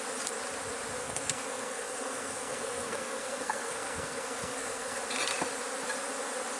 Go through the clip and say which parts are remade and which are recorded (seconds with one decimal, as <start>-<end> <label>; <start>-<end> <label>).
0.0-1.0 recorded; 1.0-5.0 remade; 5.0-6.6 recorded